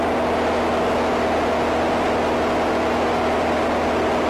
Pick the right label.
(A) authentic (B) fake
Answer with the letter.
A